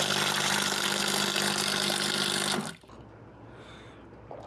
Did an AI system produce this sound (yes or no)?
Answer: no